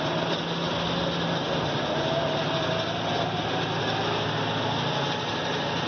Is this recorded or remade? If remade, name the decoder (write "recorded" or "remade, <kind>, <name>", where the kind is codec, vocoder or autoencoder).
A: recorded